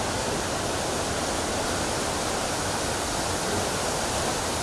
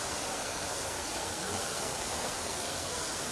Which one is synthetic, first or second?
second